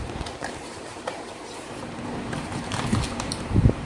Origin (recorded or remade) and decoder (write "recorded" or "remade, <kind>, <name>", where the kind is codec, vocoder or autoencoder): remade, vocoder, BigVGAN v2